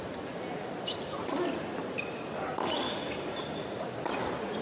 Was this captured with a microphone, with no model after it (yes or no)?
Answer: yes